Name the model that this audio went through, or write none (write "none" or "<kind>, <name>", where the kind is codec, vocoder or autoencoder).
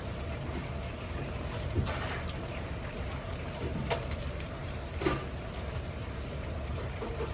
vocoder, BigVGAN v2